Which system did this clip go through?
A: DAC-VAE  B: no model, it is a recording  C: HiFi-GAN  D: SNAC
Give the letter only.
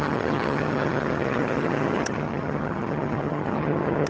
C